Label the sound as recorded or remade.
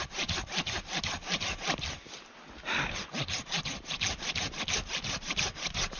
recorded